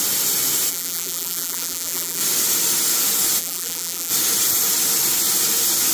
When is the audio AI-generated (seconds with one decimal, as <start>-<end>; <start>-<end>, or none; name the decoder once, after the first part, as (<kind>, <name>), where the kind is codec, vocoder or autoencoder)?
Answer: 0.7-2.2 (vocoder, BigVGAN v2); 3.4-4.1